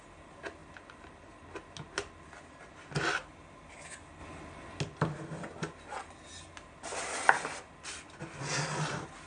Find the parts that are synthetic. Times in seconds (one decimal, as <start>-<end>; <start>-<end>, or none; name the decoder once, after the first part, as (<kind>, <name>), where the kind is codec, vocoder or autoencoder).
4.2-4.8 (vocoder, BigVGAN v2)

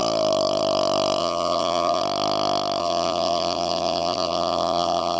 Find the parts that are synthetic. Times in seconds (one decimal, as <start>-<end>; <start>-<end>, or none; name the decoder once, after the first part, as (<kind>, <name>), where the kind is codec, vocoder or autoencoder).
1.2-2.0 (vocoder, BigVGAN v2); 2.8-5.2

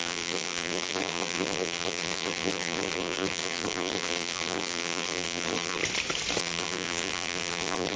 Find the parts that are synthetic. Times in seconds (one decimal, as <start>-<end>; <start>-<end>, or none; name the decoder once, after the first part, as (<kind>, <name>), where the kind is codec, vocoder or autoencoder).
0.0-5.8 (vocoder, BigVGAN v2); 6.4-8.0

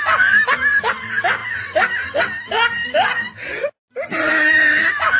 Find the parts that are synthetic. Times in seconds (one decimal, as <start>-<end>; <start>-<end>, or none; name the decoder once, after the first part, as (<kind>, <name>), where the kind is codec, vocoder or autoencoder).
2.8-3.5 (vocoder, BigVGAN v2); 4.3-5.2

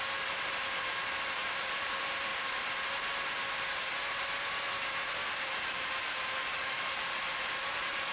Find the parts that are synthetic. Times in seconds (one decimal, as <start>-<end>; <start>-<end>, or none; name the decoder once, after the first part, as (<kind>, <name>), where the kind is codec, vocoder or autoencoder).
0.0-2.3 (vocoder, BigVGAN v2); 5.4-8.1

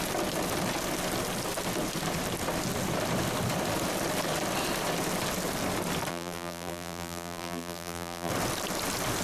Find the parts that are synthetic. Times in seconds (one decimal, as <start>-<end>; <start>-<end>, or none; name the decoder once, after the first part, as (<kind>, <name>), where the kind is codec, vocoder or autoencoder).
6.1-8.3 (vocoder, BigVGAN v2)